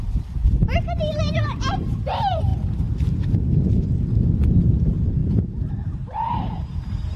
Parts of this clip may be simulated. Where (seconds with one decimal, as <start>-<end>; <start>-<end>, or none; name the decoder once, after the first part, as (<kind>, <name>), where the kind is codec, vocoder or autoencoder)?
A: 0.0-2.5 (vocoder, BigVGAN v2); 4.5-7.2